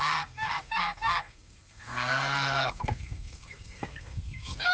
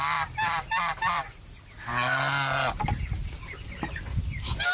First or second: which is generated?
first